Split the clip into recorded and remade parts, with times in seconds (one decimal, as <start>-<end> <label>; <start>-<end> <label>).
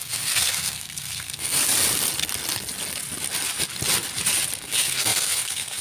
0.0-1.6 remade; 1.6-4.6 recorded; 4.6-5.8 remade